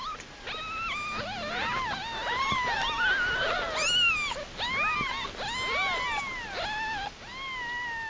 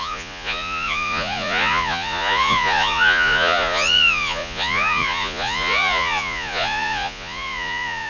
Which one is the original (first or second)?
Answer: first